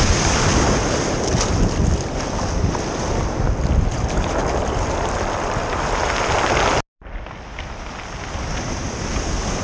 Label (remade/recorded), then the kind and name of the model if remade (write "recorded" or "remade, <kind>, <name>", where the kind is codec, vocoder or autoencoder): recorded